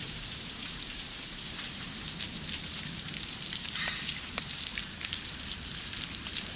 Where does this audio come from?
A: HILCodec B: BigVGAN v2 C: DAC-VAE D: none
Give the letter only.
B